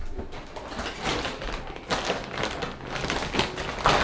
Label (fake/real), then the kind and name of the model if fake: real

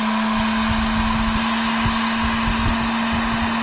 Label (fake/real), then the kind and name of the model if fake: real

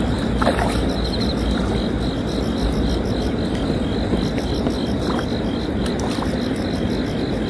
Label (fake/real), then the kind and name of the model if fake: real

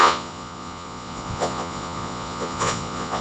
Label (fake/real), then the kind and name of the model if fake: fake, vocoder, Vocos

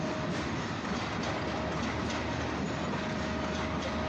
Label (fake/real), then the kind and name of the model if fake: real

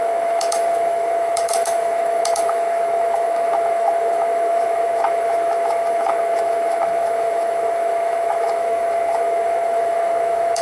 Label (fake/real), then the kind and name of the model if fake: fake, autoencoder, DAC-VAE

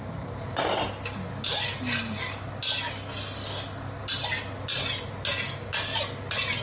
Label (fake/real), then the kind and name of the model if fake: real